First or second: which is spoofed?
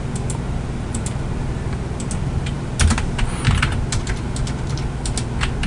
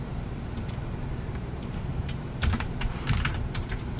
second